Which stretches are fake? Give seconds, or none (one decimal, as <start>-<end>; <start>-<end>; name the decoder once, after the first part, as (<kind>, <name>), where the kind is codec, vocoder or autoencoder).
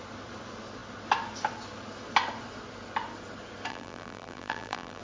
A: 3.7-5.0 (vocoder, BigVGAN v2)